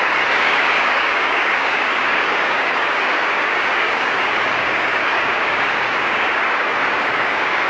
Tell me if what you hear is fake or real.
fake